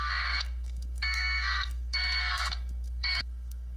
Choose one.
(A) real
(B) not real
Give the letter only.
B